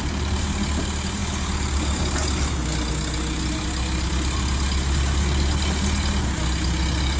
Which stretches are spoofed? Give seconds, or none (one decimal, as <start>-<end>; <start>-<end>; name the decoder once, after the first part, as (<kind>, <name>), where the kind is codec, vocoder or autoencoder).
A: none